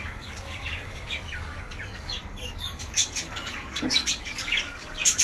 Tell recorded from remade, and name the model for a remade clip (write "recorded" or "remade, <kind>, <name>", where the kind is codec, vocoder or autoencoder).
remade, codec, DAC